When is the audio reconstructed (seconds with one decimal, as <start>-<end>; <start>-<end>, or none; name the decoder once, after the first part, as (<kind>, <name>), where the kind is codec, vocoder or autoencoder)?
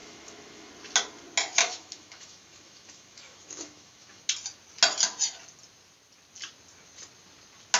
0.0-0.7 (autoencoder, DAC-VAE); 1.6-4.2